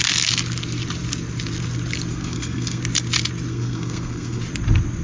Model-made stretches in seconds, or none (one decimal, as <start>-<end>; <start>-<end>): 2.1-2.8; 3.5-4.4